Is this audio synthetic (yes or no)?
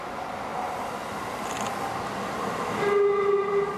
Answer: no